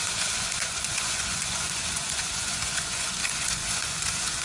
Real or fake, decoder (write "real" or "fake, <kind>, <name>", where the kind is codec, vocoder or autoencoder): fake, vocoder, Vocos